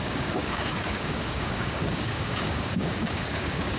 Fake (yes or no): yes